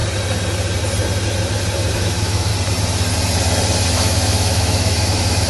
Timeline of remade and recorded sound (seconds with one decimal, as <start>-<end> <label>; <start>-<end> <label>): 0.0-1.9 recorded; 1.9-2.5 remade; 2.5-3.9 recorded; 3.9-5.5 remade